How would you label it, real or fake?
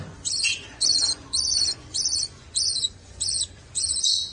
fake